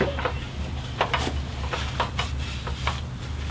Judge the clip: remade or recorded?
recorded